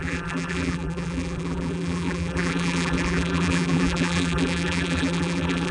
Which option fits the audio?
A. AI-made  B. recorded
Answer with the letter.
A